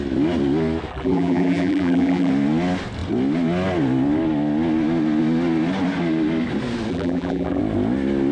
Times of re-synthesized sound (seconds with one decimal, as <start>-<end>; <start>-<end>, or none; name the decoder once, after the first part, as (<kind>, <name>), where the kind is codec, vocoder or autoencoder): 0.9-2.3 (vocoder, BigVGAN v2); 6.9-7.6